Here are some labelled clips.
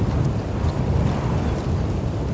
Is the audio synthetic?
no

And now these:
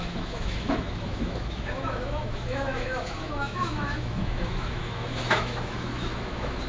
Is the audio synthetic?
yes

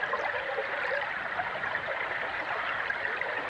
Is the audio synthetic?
yes